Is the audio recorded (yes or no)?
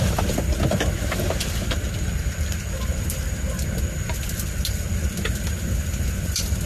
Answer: yes